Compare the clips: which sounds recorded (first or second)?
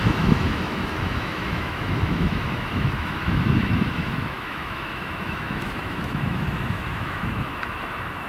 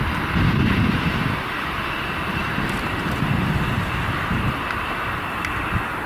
second